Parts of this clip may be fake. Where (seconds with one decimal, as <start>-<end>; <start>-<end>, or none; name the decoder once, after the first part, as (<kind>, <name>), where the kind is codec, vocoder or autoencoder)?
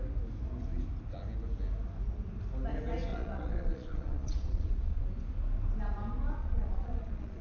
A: 3.1-5.0 (vocoder, Vocos); 6.4-7.4